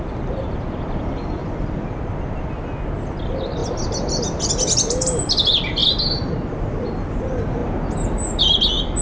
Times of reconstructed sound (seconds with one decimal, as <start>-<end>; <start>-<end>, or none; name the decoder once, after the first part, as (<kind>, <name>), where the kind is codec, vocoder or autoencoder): none